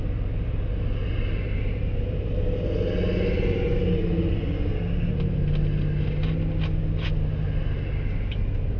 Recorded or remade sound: recorded